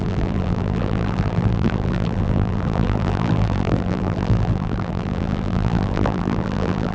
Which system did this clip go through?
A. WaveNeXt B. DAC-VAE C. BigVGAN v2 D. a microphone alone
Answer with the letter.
C